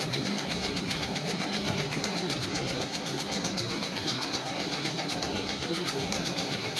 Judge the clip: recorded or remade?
remade